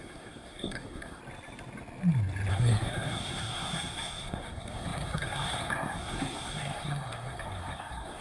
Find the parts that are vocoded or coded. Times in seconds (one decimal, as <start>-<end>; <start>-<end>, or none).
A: 0.0-1.2; 2.5-8.2